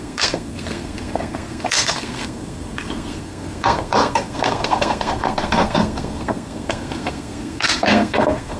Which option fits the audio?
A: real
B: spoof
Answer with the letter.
B